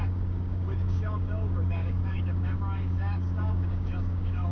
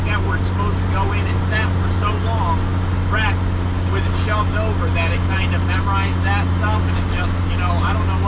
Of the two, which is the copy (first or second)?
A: first